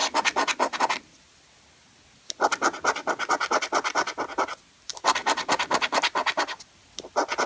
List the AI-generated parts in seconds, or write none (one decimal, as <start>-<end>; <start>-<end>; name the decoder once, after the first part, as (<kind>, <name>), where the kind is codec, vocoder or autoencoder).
none